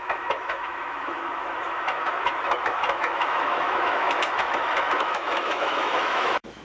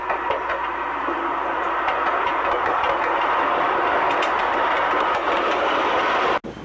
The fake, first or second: first